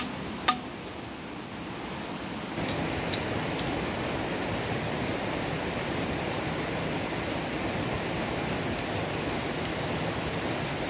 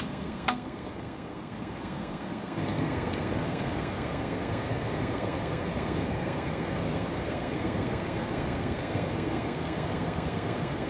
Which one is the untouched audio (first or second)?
first